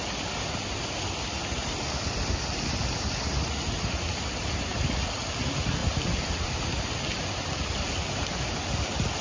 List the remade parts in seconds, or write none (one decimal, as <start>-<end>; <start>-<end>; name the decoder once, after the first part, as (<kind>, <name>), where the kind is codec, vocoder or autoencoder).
5.8-6.6 (vocoder, BigVGAN v2)